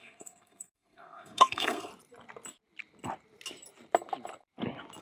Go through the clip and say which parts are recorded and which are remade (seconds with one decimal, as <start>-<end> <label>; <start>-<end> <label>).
0.0-1.9 remade; 1.9-5.0 recorded